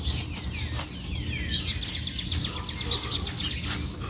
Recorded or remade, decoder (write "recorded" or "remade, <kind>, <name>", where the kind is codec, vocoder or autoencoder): recorded